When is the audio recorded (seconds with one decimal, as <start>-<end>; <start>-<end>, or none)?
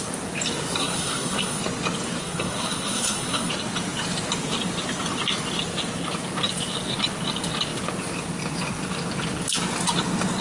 0.0-0.8; 1.6-2.2; 3.5-10.4